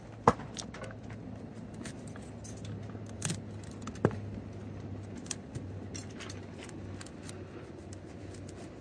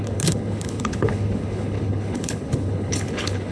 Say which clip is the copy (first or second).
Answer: second